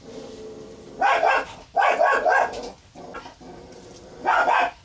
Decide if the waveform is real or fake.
real